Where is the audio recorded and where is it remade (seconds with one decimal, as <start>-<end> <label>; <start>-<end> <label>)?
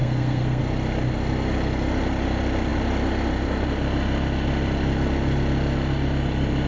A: 0.0-0.6 remade; 0.6-6.7 recorded